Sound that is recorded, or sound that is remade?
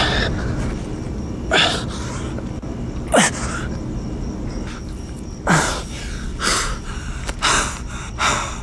recorded